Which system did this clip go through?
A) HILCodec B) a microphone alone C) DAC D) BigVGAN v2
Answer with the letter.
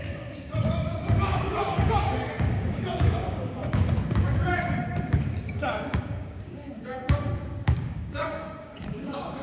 C